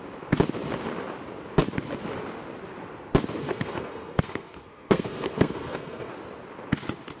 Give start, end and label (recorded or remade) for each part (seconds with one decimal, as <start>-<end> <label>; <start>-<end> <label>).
0.0-3.4 recorded; 3.4-6.1 remade; 6.1-7.2 recorded